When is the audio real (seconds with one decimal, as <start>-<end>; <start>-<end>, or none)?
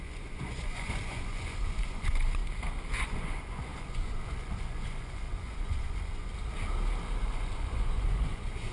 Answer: 2.4-3.0; 6.3-7.2